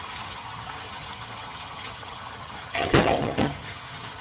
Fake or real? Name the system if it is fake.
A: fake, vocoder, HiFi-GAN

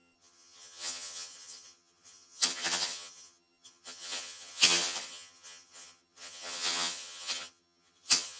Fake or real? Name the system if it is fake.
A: fake, vocoder, HiFi-GAN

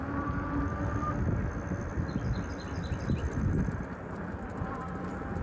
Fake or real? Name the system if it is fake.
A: real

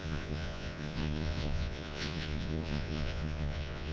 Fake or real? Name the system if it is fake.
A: fake, vocoder, Vocos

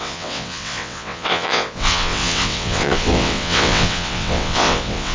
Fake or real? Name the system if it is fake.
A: fake, vocoder, WaveNeXt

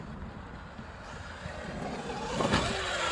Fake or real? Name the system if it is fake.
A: real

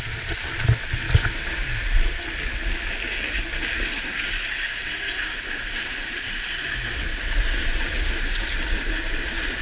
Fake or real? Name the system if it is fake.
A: real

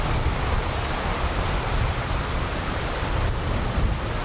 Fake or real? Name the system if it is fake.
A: real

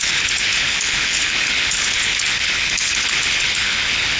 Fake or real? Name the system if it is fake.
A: fake, codec, HILCodec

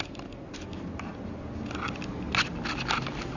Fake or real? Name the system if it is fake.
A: real